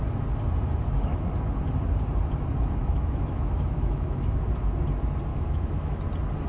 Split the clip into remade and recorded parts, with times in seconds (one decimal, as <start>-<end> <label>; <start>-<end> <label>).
0.0-2.8 recorded; 2.8-4.4 remade; 4.4-5.3 recorded; 5.3-6.0 remade; 6.0-6.5 recorded